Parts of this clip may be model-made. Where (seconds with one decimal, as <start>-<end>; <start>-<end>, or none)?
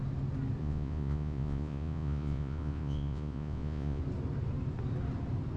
0.6-4.0